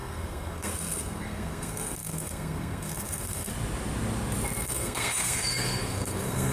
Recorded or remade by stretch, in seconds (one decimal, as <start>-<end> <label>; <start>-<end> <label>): 0.0-3.5 remade; 3.5-4.6 recorded; 4.6-6.5 remade